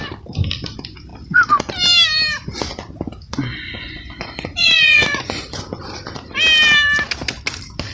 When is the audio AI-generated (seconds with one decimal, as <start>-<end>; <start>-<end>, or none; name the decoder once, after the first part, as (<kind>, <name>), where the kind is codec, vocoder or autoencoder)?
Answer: 3.5-5.4 (vocoder, Vocos)